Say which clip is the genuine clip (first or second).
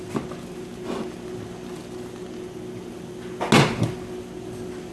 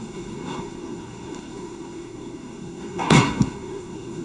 first